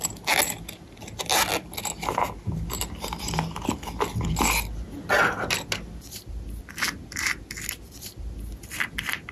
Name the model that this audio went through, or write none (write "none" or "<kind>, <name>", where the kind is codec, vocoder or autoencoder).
none